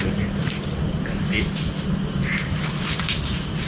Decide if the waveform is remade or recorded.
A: recorded